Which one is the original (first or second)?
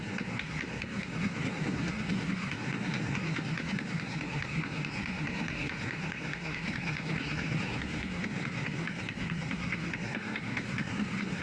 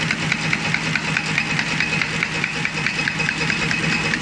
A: second